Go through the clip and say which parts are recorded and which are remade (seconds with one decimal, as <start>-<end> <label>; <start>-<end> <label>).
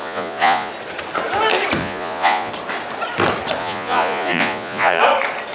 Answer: 0.0-0.7 remade; 0.7-1.8 recorded; 1.8-2.5 remade; 2.5-3.6 recorded; 3.6-5.0 remade; 5.0-5.5 recorded